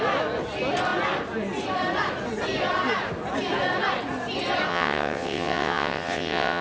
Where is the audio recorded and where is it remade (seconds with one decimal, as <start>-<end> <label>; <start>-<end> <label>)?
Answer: 0.0-4.7 recorded; 4.7-6.6 remade